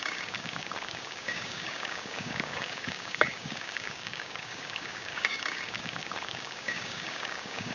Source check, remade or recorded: remade